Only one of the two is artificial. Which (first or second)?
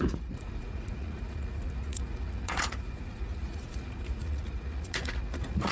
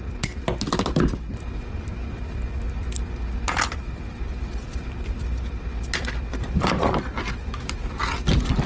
first